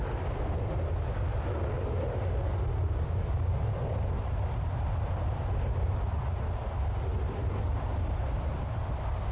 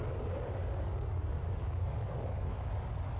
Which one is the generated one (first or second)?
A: second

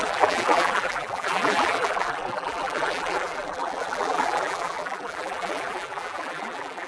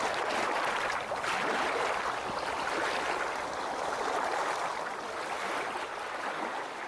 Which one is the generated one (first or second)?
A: first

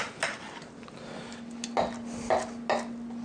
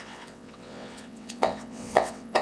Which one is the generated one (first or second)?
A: second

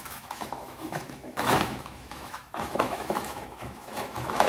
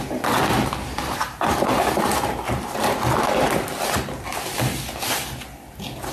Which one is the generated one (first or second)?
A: first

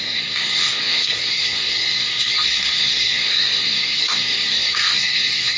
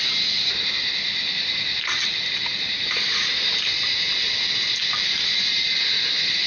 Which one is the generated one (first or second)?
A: first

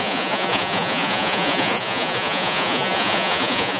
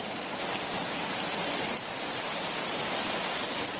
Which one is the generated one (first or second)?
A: first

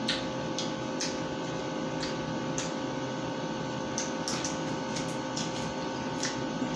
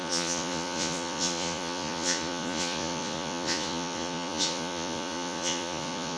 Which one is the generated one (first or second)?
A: second